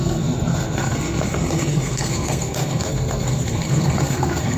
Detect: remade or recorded remade